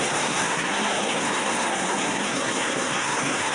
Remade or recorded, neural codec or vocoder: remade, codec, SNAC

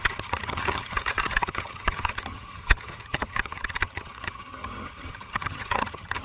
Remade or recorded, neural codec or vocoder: remade, vocoder, HiFi-GAN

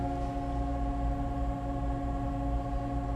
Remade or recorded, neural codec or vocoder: recorded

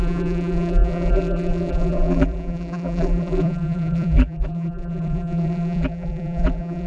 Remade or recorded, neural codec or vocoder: remade, vocoder, BigVGAN v2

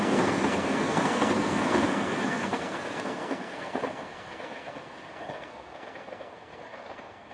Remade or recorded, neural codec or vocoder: remade, codec, SNAC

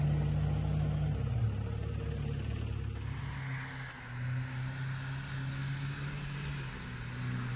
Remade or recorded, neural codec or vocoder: recorded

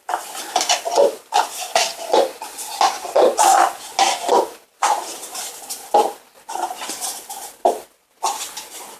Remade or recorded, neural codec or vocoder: recorded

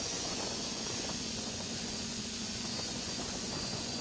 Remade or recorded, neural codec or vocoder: remade, vocoder, Vocos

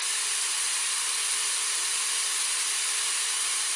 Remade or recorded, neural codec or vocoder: recorded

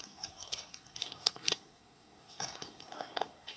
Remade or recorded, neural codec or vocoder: remade, codec, SNAC